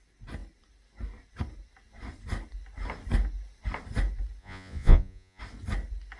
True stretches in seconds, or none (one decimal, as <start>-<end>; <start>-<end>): 0.0-4.4; 5.4-6.2